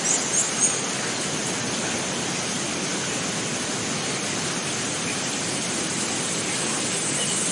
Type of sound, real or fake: real